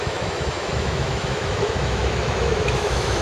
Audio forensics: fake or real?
fake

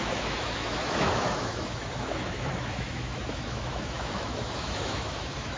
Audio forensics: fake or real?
fake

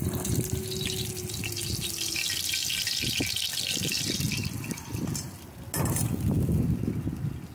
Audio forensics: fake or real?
real